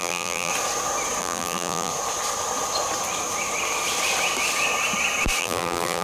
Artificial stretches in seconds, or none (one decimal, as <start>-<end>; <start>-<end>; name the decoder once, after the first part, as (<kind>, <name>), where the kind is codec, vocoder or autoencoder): 0.0-0.5 (vocoder, BigVGAN v2); 1.2-1.9; 5.4-6.0